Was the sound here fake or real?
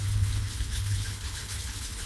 fake